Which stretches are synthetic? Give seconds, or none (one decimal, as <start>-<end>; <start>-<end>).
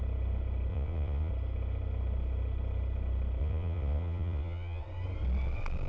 0.7-1.3; 3.4-4.8